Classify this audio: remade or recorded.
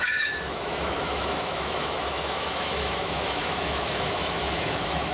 remade